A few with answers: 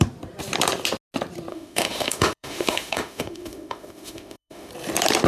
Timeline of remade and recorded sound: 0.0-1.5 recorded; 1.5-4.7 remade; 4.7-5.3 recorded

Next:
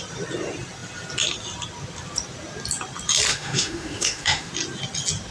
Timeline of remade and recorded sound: 0.0-3.3 recorded; 3.3-4.5 remade; 4.5-5.3 recorded

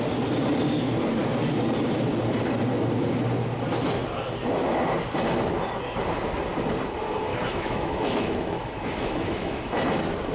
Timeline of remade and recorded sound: 0.0-7.3 recorded; 7.3-9.7 remade; 9.7-10.3 recorded

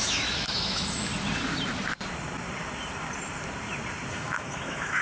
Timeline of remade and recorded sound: 0.0-1.1 remade; 1.1-4.1 recorded; 4.1-5.0 remade

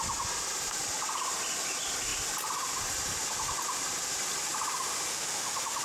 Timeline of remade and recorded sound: 0.0-5.1 recorded; 5.1-5.8 remade

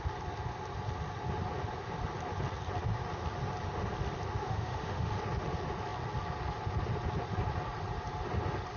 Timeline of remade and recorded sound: 0.0-4.4 recorded; 4.4-5.1 remade; 5.1-8.8 recorded

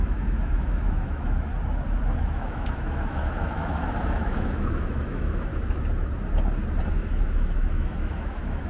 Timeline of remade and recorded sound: 0.0-1.5 remade; 1.5-2.2 recorded; 2.2-5.5 remade; 5.5-6.9 recorded; 6.9-8.7 remade

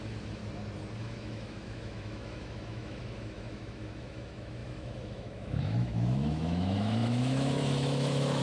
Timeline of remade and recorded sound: 0.0-0.4 remade; 0.4-1.0 recorded; 1.0-8.4 remade